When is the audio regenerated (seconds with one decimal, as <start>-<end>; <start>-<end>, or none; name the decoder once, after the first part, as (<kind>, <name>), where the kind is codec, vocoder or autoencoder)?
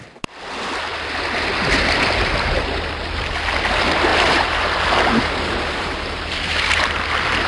4.1-7.0 (vocoder, BigVGAN v2)